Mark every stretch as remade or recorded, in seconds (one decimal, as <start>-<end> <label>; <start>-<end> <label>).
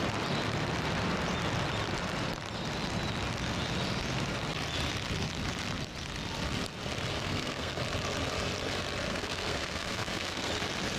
0.0-7.2 recorded; 7.2-7.8 remade; 7.8-9.1 recorded; 9.1-10.5 remade; 10.5-11.0 recorded